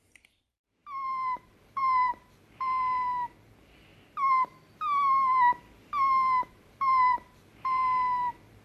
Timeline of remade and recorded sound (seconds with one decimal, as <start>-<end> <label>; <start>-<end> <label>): 0.0-3.9 remade; 3.9-6.5 recorded; 6.5-8.6 remade